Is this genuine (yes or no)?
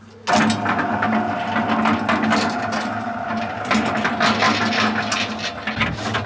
yes